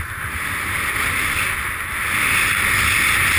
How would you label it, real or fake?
real